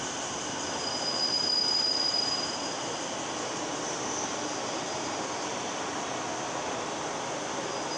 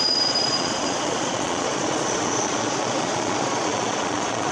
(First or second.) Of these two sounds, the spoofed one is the second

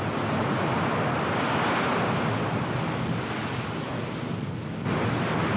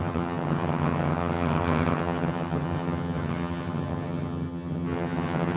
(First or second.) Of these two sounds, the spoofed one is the second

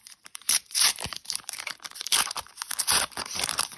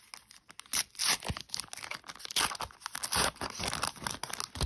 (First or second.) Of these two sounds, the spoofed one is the first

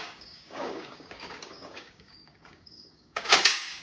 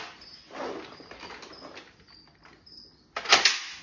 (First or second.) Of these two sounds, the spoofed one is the first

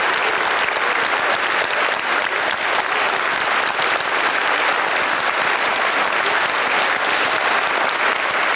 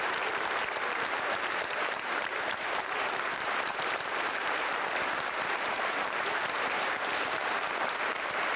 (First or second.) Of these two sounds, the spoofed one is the second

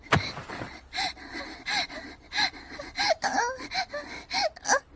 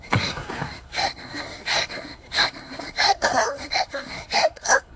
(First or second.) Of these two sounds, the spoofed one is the second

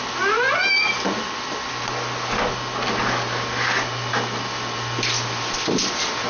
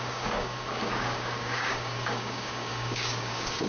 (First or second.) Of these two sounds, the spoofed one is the second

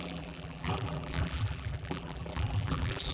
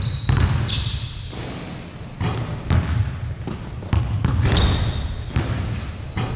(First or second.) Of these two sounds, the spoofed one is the first